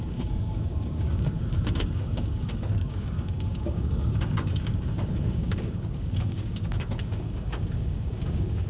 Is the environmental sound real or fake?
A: fake